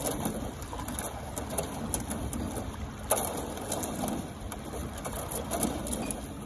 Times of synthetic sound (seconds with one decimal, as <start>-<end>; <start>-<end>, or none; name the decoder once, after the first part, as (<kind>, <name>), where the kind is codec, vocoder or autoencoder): none